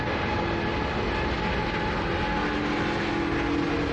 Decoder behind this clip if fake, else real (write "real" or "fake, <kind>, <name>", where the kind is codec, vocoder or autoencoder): real